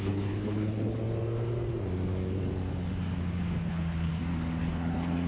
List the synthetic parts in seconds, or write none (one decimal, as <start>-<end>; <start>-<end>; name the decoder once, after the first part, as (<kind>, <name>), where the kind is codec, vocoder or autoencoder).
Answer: 0.0-1.0 (codec, HILCodec); 3.6-4.1; 4.6-5.3